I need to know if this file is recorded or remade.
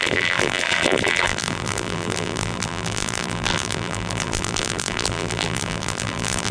remade